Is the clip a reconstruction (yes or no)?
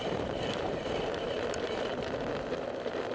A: yes